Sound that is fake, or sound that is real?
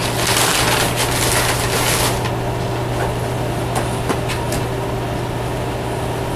real